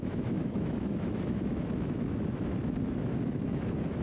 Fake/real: fake